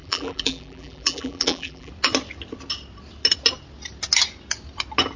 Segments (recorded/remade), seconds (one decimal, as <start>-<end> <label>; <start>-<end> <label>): 0.0-1.9 remade; 1.9-5.2 recorded